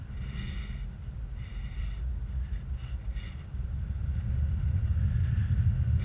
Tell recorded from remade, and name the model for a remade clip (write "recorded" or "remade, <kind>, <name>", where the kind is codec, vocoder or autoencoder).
recorded